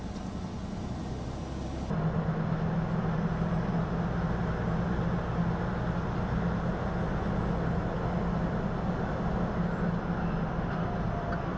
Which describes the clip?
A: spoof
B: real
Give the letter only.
B